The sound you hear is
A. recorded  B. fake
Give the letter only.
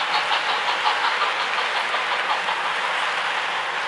A